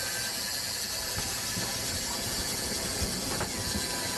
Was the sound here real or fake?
real